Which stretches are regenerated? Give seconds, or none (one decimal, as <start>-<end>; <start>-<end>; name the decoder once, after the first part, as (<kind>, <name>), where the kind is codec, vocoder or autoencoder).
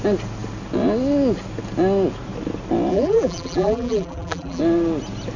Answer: 2.9-4.6 (vocoder, BigVGAN v2)